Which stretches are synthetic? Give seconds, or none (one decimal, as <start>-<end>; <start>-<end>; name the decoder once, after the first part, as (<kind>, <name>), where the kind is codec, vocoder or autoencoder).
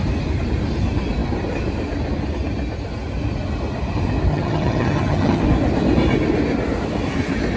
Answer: 4.3-5.4 (vocoder, HiFi-GAN)